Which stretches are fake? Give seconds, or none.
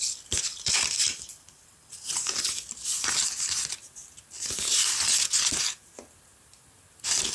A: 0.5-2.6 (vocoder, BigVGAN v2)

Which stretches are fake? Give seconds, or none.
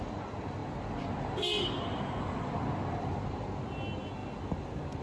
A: none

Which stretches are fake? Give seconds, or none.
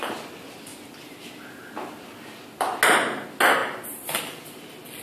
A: 3.6-4.2 (vocoder, BigVGAN v2)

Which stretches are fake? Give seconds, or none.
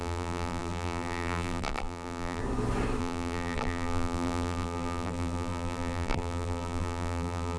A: 0.0-2.4 (vocoder, BigVGAN v2); 3.0-7.6